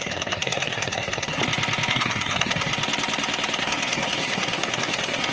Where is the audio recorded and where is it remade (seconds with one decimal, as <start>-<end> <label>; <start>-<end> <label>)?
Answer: 0.0-1.4 remade; 1.4-1.9 recorded; 1.9-2.7 remade; 2.7-3.6 recorded; 3.6-5.3 remade